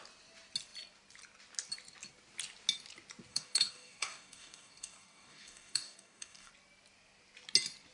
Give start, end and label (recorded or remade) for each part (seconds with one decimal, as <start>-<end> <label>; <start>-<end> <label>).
0.0-3.3 recorded; 3.3-6.5 remade; 6.5-7.9 recorded